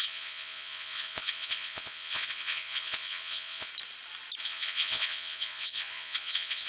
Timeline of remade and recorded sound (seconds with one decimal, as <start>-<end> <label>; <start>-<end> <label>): 0.0-3.7 remade; 3.7-4.4 recorded; 4.4-6.7 remade